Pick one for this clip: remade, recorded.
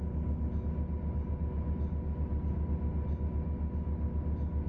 recorded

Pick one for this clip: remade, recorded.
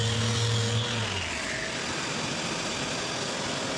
recorded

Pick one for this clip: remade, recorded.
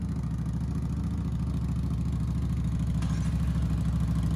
recorded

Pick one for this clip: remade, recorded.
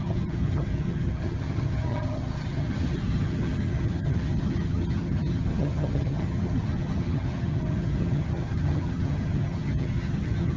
remade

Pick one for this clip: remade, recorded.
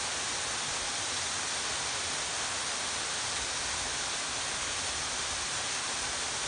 recorded